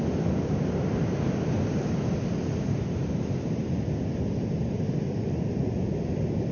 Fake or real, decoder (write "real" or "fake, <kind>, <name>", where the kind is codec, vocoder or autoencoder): fake, vocoder, BigVGAN v2